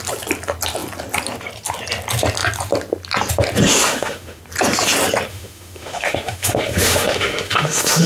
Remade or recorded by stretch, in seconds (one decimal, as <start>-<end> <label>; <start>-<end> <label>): 0.0-3.7 recorded; 3.7-4.4 remade; 4.4-5.3 recorded; 5.3-8.1 remade